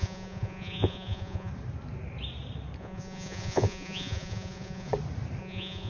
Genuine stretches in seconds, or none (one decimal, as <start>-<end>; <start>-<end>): 1.5-2.8; 4.9-5.4

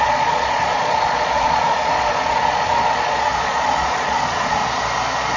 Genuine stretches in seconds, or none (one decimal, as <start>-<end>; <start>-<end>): 4.6-5.4

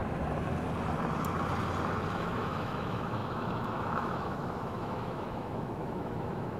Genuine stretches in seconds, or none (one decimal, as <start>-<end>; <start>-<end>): 0.0-2.2

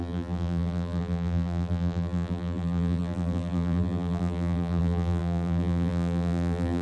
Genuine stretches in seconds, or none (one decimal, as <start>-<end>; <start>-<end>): none

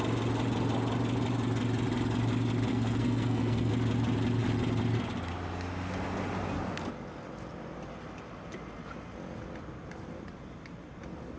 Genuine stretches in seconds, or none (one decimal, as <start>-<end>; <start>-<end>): 0.0-2.7; 3.7-11.4